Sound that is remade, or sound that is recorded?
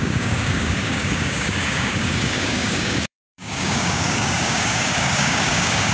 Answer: remade